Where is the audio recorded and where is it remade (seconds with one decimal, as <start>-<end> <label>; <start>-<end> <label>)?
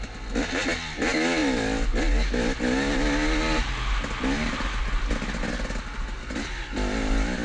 0.0-7.4 recorded